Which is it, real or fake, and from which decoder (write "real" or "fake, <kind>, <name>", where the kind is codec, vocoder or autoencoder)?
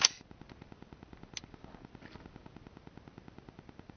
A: real